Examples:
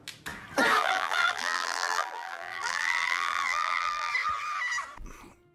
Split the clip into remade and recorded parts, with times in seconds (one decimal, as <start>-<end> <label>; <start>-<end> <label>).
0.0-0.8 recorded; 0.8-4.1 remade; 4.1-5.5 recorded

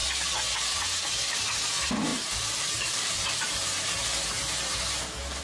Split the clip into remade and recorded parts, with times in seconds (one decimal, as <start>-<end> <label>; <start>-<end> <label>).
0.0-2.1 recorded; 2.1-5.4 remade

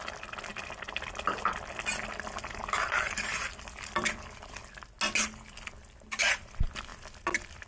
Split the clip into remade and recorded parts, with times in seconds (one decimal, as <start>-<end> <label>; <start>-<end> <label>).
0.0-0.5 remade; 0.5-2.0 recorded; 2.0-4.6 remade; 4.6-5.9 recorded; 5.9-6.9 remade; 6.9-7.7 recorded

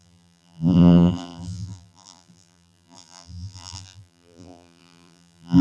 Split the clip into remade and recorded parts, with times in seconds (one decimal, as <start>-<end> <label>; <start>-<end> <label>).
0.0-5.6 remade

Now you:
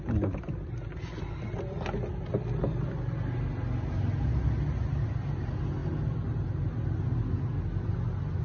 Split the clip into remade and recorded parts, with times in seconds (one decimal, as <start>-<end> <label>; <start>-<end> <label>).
0.0-8.4 recorded

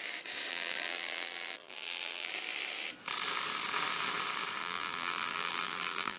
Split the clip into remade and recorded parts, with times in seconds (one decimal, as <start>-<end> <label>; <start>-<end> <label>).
0.0-0.5 recorded; 0.5-2.3 remade; 2.3-4.6 recorded; 4.6-6.2 remade